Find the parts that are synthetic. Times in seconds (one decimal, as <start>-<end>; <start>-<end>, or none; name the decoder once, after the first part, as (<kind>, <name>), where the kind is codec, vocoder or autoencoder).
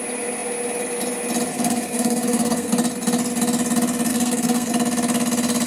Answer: 1.5-2.7 (codec, SNAC); 4.1-4.7